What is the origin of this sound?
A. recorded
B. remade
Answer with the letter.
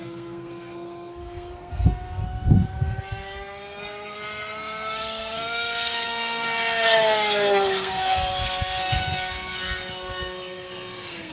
B